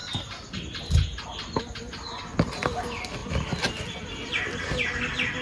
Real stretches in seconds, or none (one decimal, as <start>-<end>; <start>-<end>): 0.0-5.4